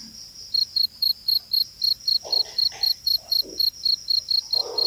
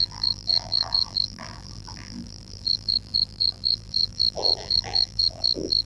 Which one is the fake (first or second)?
second